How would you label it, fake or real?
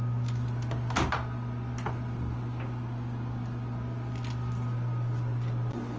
real